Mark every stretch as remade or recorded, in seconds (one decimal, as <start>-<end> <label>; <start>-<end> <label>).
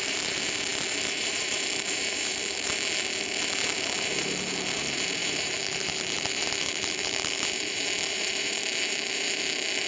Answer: 0.0-9.9 remade